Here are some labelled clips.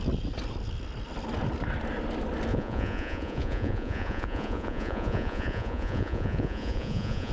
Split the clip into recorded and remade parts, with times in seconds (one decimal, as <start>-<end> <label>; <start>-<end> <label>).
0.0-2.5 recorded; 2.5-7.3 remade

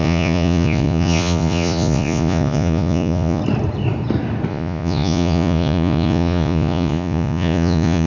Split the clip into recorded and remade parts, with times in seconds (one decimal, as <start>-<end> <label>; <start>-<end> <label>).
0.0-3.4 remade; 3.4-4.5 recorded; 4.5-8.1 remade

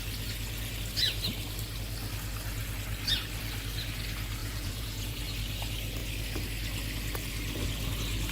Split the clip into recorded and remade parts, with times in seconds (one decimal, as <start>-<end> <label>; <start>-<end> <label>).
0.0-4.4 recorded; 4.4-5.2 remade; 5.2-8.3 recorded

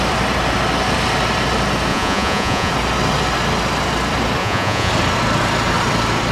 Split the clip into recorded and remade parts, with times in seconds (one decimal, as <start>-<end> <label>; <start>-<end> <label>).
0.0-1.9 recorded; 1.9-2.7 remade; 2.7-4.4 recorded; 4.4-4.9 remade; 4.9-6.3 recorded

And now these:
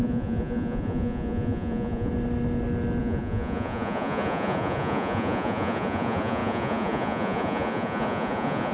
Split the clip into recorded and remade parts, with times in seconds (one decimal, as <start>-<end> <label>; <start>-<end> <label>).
0.0-2.1 remade; 2.1-3.0 recorded; 3.0-8.7 remade